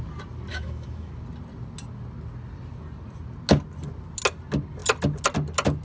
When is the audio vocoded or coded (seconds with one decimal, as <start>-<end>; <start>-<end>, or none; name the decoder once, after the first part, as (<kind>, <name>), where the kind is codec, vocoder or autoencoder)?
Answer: 0.5-1.1 (autoencoder, DAC-VAE)